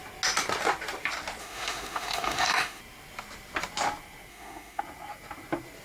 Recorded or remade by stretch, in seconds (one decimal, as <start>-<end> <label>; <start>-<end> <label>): 0.0-1.4 recorded; 1.4-2.8 remade; 2.8-4.3 recorded; 4.3-4.8 remade; 4.8-5.8 recorded